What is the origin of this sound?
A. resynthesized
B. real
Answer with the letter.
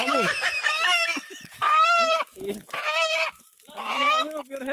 A